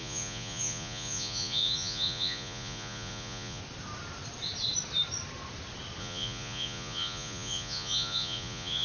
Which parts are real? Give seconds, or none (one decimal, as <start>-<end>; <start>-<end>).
3.6-6.0